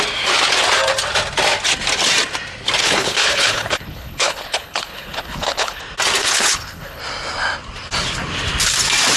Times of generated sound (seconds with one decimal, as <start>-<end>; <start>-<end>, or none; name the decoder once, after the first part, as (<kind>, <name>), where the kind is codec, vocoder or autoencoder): 2.8-5.8 (codec, HILCodec); 6.2-7.0